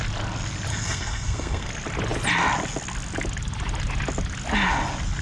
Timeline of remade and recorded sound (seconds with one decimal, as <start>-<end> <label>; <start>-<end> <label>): 0.0-0.7 recorded; 0.7-1.7 remade; 1.7-5.2 recorded